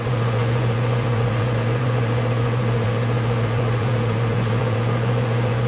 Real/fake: fake